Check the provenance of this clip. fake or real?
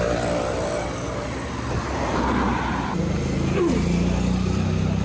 real